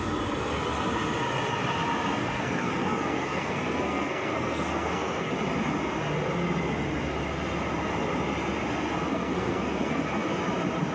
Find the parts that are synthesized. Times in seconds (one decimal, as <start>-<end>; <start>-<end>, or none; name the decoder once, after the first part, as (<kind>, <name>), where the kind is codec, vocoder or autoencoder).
2.2-5.3 (codec, SNAC); 9.1-10.0